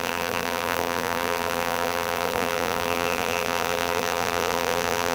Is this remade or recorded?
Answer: remade